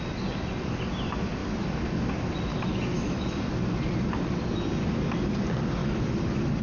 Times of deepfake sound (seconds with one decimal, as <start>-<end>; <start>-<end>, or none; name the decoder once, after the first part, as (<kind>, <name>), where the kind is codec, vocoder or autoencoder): 2.5-3.3 (autoencoder, DAC-VAE); 5.8-6.6